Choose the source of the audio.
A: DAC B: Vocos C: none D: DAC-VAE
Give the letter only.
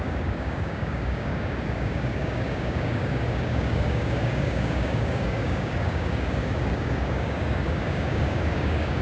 A